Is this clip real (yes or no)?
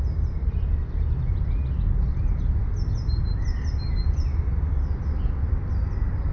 yes